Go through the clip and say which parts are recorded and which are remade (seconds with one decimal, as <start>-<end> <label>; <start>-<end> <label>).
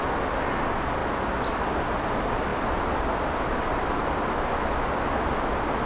0.0-5.9 recorded